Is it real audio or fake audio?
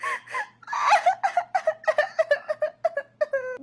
real